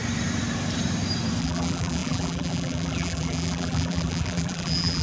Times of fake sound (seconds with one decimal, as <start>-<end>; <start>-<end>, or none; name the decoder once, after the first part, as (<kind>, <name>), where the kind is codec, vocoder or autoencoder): 1.4-5.0 (vocoder, BigVGAN v2)